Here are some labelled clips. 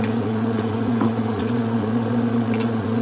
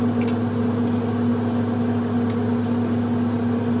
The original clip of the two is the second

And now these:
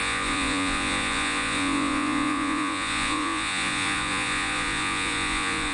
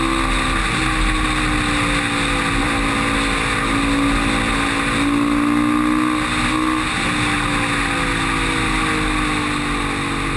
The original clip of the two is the second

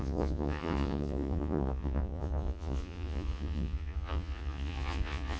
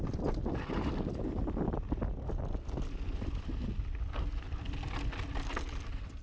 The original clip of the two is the second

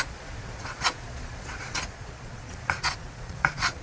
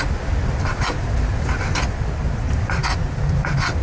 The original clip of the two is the second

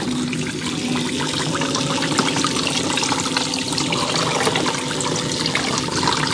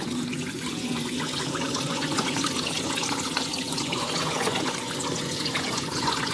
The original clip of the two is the first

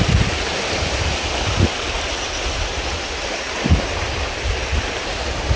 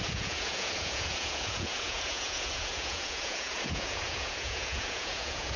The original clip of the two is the first